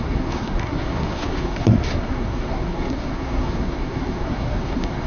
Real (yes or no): no